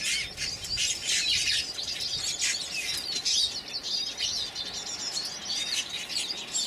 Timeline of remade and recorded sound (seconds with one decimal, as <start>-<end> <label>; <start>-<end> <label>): 0.0-0.8 recorded; 0.8-2.0 remade; 2.0-6.7 recorded